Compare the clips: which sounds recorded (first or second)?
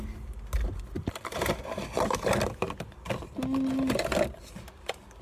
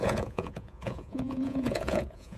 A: first